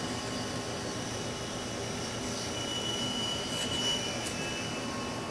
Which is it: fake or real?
real